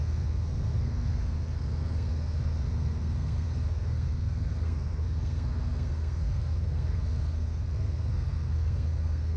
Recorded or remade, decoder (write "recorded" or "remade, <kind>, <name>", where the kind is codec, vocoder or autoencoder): remade, codec, SNAC